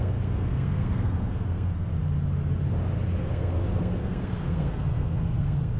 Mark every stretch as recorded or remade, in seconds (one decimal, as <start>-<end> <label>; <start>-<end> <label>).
0.0-1.9 remade; 1.9-3.2 recorded; 3.2-5.8 remade